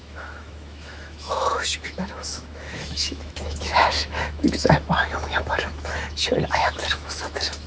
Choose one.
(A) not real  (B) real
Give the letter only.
A